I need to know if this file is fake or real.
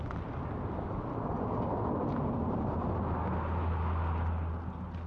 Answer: real